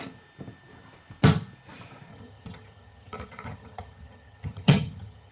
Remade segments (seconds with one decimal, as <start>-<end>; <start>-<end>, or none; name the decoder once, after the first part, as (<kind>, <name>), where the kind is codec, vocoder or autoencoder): 2.1-5.3 (vocoder, HiFi-GAN)